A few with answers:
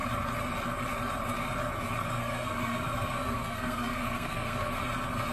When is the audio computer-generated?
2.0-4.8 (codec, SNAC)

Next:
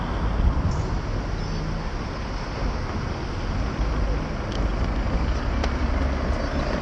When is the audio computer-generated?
none

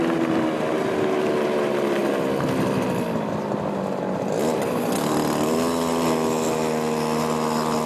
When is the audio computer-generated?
none

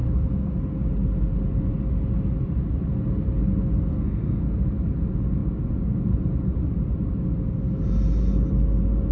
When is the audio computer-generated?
3.9-4.4 (codec, SNAC)

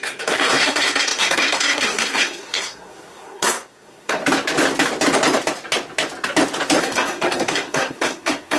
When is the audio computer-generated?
0.0-4.2 (codec, SNAC); 6.8-8.6

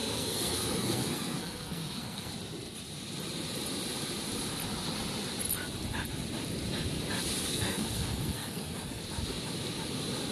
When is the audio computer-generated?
0.0-2.3 (codec, SNAC); 7.5-9.0